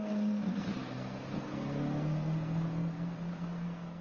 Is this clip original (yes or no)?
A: no